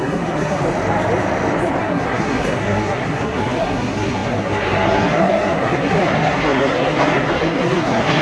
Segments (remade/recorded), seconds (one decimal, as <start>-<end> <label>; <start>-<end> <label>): 0.0-0.6 remade; 0.6-1.8 recorded; 1.8-8.2 remade